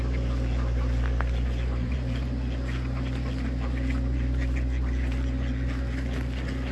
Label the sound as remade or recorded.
recorded